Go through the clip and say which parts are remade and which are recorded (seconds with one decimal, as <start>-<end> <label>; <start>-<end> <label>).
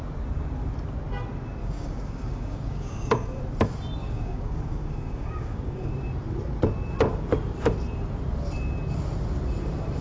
0.0-1.6 recorded; 1.6-3.4 remade; 3.4-4.0 recorded; 4.0-5.9 remade; 5.9-10.0 recorded